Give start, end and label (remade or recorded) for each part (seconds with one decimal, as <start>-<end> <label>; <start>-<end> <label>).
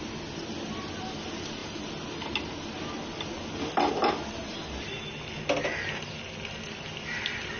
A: 0.0-7.6 recorded